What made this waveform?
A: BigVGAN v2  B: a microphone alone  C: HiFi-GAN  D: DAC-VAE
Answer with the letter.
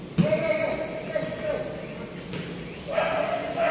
B